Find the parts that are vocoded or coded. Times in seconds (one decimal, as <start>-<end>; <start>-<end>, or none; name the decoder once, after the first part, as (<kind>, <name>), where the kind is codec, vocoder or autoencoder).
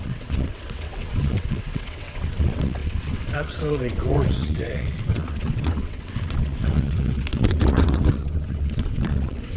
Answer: 0.0-9.6 (vocoder, WaveNeXt)